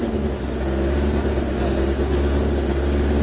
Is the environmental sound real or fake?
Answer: real